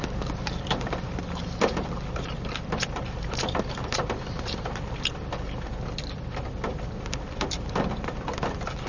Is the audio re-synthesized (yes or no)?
yes